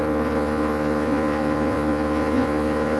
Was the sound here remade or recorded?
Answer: remade